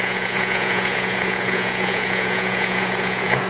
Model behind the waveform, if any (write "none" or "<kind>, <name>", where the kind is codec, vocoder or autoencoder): vocoder, Vocos